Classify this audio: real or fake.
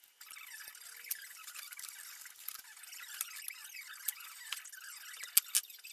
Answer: real